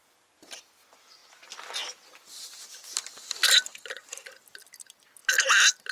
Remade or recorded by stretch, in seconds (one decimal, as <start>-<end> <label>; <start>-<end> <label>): 0.0-5.9 recorded